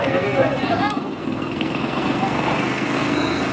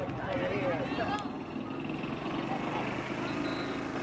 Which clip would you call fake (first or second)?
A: first